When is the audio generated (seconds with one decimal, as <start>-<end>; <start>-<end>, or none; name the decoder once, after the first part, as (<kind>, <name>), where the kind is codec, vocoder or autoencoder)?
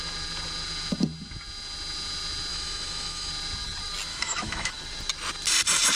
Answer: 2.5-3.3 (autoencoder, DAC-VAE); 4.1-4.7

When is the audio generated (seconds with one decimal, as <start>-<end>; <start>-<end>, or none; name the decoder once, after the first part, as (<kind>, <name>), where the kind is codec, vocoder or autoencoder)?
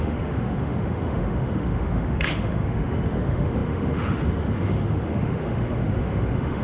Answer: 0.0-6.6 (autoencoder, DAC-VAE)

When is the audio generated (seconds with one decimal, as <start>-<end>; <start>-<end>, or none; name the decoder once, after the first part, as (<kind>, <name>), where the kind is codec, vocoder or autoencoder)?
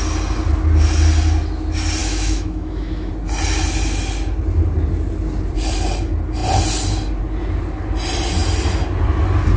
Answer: 2.0-3.1 (autoencoder, DAC-VAE)